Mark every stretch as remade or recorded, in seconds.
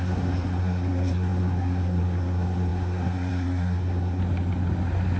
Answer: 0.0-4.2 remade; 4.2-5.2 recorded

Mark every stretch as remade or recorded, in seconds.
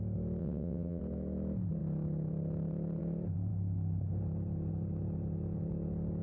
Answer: 0.0-0.4 recorded; 0.4-1.0 remade; 1.0-6.2 recorded